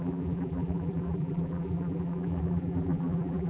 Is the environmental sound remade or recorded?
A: remade